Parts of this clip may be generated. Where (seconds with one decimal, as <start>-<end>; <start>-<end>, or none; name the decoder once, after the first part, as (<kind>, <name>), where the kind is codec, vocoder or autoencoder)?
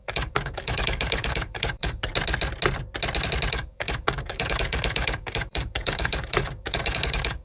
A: 0.0-2.1 (codec, DAC); 3.5-7.4